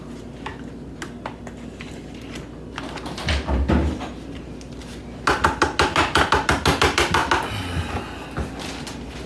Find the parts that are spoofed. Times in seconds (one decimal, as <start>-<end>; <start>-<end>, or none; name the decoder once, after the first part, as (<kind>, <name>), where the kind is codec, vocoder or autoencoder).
none